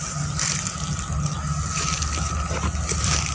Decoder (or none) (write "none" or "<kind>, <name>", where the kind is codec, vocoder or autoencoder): none